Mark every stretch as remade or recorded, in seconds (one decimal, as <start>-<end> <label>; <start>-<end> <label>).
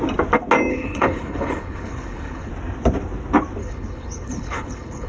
0.0-0.7 recorded; 0.7-2.5 remade; 2.5-3.6 recorded; 3.6-5.1 remade